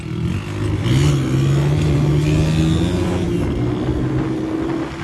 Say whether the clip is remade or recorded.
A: recorded